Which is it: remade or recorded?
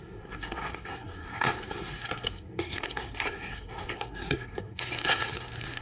remade